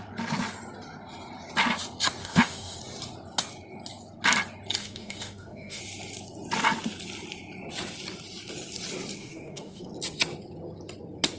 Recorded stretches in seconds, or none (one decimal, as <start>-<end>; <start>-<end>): 0.0-2.2; 2.8-4.8; 5.8-9.2; 9.9-11.4